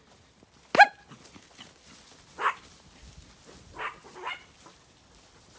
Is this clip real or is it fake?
real